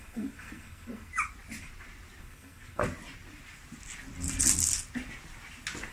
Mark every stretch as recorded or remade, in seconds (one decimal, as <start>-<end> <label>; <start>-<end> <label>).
0.0-1.1 remade; 1.1-2.2 recorded; 2.2-2.8 remade; 2.8-5.9 recorded